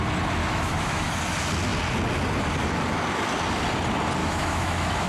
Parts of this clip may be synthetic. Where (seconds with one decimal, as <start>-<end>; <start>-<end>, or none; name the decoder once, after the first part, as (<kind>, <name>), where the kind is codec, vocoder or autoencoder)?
0.4-1.0 (autoencoder, DAC-VAE); 4.2-5.1